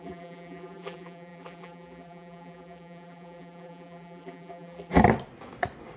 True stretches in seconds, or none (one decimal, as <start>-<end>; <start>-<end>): 5.0-6.0